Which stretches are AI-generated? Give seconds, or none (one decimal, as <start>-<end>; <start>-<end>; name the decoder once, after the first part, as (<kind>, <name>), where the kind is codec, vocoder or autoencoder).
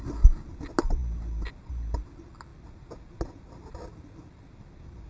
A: none